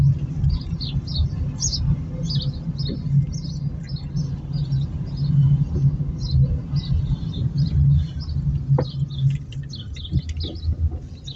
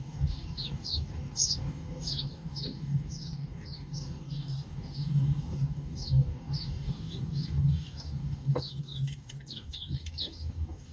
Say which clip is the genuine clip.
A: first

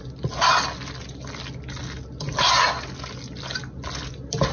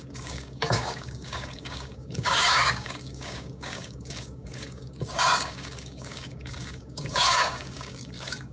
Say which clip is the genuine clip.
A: first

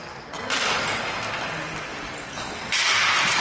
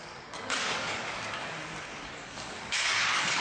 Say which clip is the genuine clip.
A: first